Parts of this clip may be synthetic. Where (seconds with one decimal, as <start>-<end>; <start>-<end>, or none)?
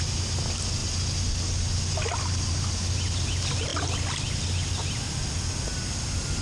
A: none